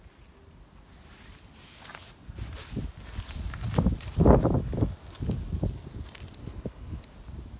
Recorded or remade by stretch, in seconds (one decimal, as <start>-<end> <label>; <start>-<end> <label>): 0.0-6.4 recorded; 6.4-7.0 remade; 7.0-7.6 recorded